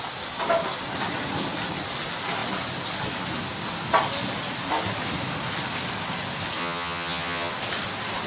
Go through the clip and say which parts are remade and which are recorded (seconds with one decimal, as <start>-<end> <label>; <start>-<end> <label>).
0.0-6.6 recorded; 6.6-7.5 remade; 7.5-8.3 recorded